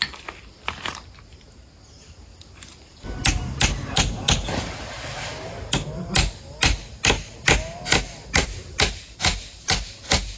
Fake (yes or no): no